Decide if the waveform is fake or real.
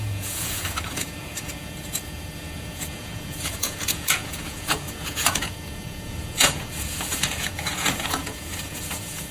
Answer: fake